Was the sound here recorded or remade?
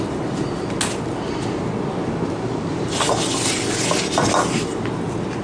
recorded